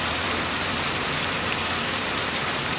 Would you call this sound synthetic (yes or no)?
yes